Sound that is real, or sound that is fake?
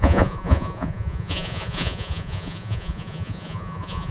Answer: fake